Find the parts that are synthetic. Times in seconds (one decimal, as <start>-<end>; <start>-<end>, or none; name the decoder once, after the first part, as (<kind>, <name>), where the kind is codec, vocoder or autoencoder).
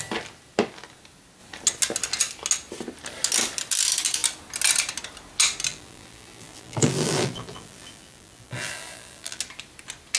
5.7-9.4 (vocoder, BigVGAN v2)